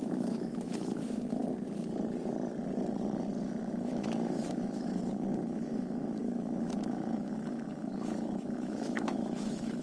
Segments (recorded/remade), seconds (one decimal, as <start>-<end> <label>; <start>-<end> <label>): 0.0-1.4 remade; 1.4-3.4 recorded; 3.4-9.8 remade